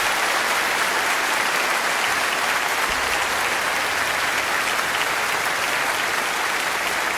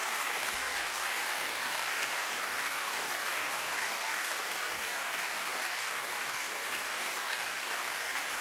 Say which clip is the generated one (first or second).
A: second